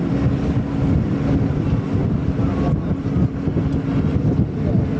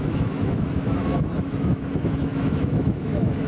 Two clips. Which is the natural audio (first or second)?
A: first